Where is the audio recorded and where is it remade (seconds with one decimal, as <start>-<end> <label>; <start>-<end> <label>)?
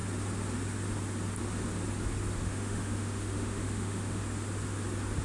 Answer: 0.0-2.4 recorded; 2.4-4.2 remade; 4.2-5.2 recorded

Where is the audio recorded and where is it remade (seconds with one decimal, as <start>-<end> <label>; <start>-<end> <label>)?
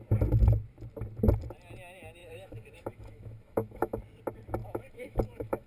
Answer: 0.0-2.2 recorded; 2.2-4.0 remade; 4.0-4.6 recorded; 4.6-5.7 remade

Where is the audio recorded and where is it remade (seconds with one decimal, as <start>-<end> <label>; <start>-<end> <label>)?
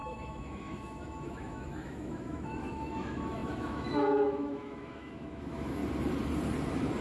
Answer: 0.0-5.8 remade; 5.8-7.0 recorded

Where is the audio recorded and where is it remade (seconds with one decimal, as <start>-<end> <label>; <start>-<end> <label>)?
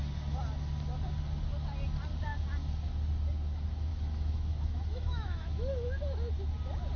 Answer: 0.0-3.9 recorded; 3.9-6.0 remade; 6.0-7.0 recorded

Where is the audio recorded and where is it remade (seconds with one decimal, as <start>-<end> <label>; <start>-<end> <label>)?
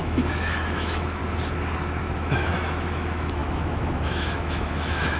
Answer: 0.0-1.2 remade; 1.2-2.0 recorded; 2.0-5.2 remade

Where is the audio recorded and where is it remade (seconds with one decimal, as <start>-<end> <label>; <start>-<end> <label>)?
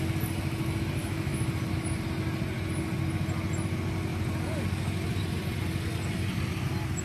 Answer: 0.0-1.0 recorded; 1.0-1.5 remade; 1.5-7.0 recorded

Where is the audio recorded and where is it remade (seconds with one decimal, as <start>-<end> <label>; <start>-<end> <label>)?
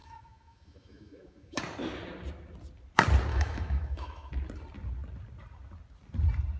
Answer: 0.0-1.6 remade; 1.6-3.3 recorded; 3.3-4.3 remade; 4.3-6.6 recorded